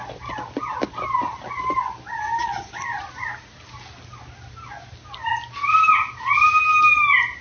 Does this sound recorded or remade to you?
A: recorded